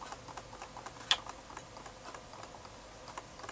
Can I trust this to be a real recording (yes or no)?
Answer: yes